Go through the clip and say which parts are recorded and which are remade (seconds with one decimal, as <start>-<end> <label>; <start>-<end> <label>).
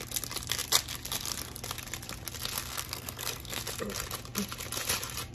0.0-2.7 recorded; 2.7-3.6 remade; 3.6-5.3 recorded